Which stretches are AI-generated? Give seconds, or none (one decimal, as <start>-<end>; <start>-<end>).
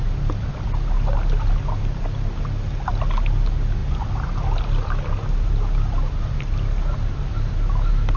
none